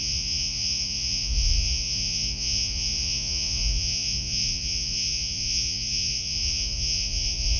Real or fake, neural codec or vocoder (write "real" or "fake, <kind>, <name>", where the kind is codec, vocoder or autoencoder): fake, vocoder, Vocos